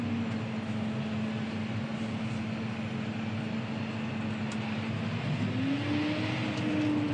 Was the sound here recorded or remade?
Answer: recorded